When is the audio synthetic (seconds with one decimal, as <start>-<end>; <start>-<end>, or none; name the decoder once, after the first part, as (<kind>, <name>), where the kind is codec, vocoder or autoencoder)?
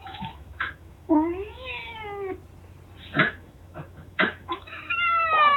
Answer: 0.0-1.8 (autoencoder, DAC-VAE); 3.2-5.6